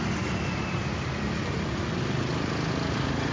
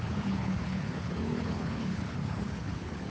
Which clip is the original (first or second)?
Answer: first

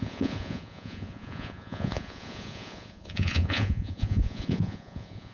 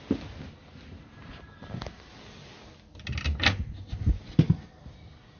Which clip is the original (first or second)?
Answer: second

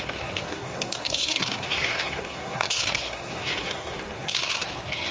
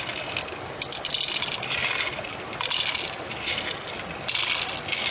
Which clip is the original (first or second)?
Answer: second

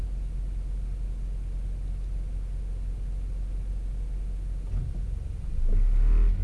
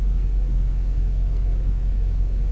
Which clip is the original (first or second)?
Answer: first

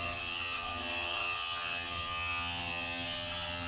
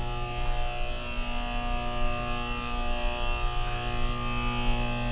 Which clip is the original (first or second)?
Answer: second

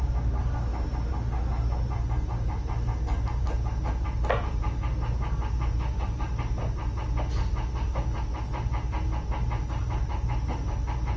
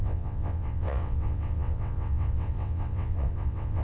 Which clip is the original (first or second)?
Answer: first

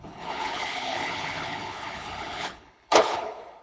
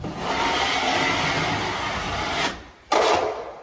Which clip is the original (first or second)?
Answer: second